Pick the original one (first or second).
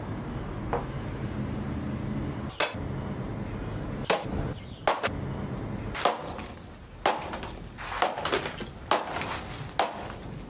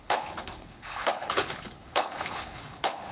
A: first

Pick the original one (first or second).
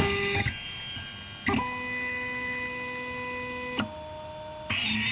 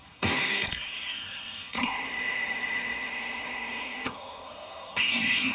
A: first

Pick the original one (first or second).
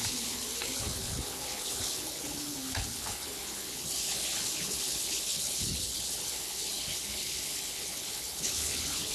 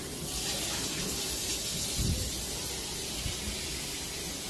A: second